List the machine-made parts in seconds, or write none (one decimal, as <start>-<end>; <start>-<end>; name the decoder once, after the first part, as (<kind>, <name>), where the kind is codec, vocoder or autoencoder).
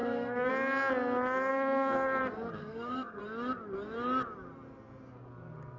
0.0-0.5 (codec, SNAC); 1.5-2.2; 2.6-3.2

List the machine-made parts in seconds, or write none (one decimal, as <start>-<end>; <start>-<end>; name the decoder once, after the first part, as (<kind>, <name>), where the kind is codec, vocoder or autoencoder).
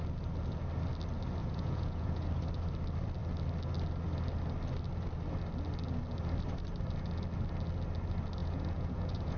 1.4-2.3 (vocoder, Vocos); 8.4-9.4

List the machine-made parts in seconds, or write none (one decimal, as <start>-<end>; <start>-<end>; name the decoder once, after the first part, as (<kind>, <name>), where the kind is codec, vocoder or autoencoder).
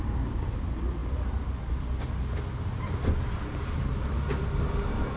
none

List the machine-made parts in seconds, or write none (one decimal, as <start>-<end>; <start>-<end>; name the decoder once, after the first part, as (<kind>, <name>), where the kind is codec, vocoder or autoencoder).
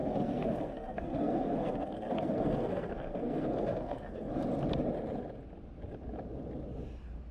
0.0-4.3 (codec, SNAC)